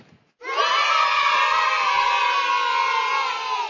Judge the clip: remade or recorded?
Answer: recorded